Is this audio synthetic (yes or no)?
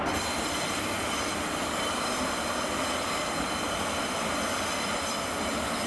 no